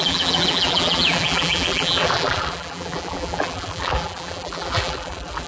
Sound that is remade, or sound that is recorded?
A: remade